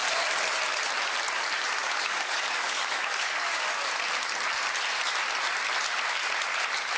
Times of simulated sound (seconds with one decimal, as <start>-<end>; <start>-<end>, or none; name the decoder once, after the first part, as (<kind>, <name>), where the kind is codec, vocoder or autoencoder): 1.8-3.9 (codec, DAC)